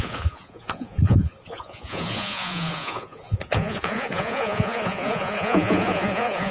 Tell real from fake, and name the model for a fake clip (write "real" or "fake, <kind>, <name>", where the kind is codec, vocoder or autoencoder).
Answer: fake, vocoder, Vocos